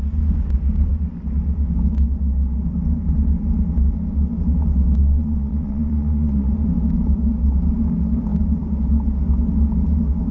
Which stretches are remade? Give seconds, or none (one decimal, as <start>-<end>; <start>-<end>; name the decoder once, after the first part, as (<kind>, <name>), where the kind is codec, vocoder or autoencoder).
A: 5.0-6.5 (vocoder, WaveNeXt)